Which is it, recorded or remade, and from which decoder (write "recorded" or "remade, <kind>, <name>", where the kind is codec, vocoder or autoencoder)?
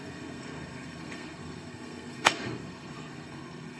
remade, codec, SNAC